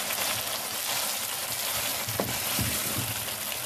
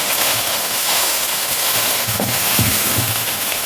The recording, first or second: first